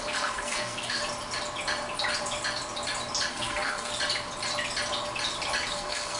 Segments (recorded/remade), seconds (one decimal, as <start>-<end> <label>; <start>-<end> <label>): 0.0-1.0 remade; 1.0-3.3 recorded; 3.3-3.9 remade; 3.9-5.7 recorded; 5.7-6.2 remade